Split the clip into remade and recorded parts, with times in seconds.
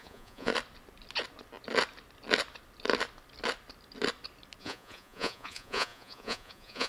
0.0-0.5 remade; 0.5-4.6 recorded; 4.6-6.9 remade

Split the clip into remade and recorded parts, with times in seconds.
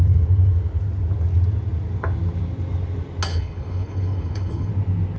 0.0-3.3 recorded; 3.3-4.7 remade; 4.7-5.2 recorded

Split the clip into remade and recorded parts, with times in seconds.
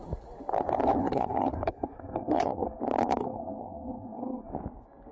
0.0-1.0 recorded; 1.0-2.8 remade; 2.8-3.2 recorded; 3.2-4.5 remade; 4.5-5.1 recorded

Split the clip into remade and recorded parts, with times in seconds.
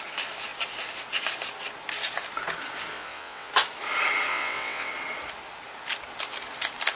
0.0-2.9 recorded; 2.9-3.5 remade; 3.5-4.3 recorded; 4.3-4.9 remade; 4.9-7.0 recorded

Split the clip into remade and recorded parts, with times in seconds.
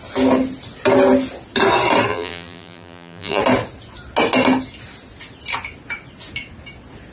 0.0-2.1 recorded; 2.1-3.4 remade; 3.4-7.1 recorded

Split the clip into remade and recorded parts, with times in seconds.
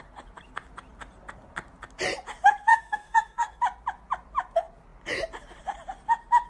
0.0-2.7 recorded; 2.7-3.6 remade; 3.6-6.5 recorded